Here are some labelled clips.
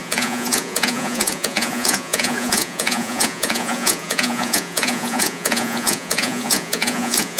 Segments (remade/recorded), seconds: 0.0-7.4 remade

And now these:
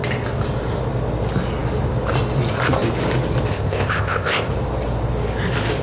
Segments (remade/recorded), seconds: 0.0-3.5 recorded; 3.5-4.5 remade; 4.5-5.8 recorded